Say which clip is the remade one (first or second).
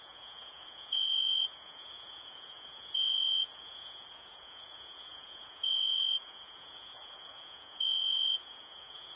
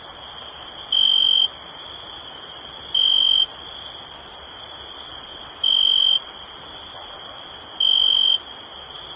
first